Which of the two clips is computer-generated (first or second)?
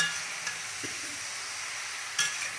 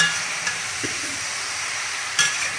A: second